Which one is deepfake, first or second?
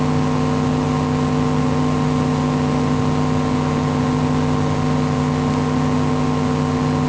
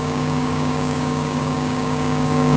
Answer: second